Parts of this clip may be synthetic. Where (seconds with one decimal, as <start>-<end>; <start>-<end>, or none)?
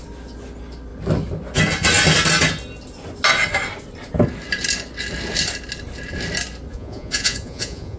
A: 6.7-8.0